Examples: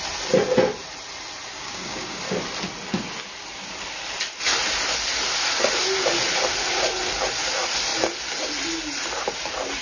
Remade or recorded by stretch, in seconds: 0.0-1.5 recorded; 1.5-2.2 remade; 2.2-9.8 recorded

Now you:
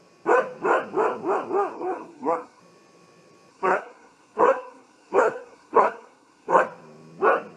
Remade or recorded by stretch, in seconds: 0.0-1.7 recorded; 1.7-2.6 remade; 2.6-3.5 recorded; 3.5-6.6 remade; 6.6-7.6 recorded

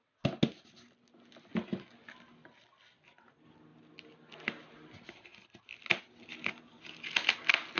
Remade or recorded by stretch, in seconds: 0.0-7.8 recorded

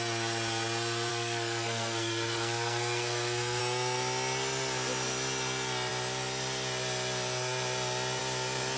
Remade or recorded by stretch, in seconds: 0.0-1.1 recorded; 1.1-3.6 remade; 3.6-8.8 recorded